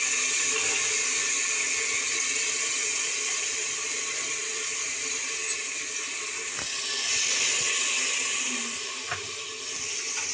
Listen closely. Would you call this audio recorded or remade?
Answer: recorded